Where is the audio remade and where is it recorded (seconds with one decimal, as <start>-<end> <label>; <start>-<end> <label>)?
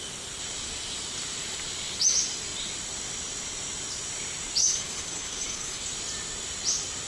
0.0-4.6 recorded; 4.6-5.9 remade; 5.9-7.1 recorded